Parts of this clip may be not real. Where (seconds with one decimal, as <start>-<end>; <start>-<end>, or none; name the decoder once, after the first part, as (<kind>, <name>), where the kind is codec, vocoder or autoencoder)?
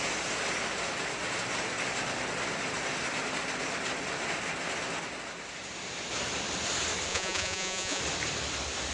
7.1-8.0 (vocoder, Vocos)